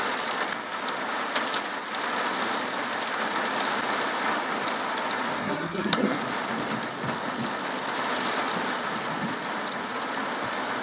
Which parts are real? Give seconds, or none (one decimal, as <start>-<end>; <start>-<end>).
0.0-5.4; 6.2-10.8